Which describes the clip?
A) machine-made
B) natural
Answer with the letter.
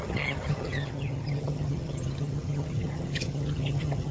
A